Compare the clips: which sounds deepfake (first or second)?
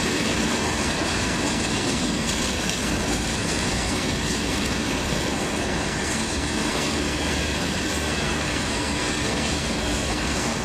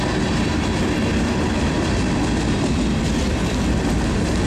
first